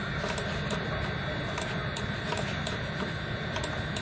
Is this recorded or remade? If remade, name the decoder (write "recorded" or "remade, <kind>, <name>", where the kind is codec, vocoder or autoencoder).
remade, vocoder, BigVGAN v2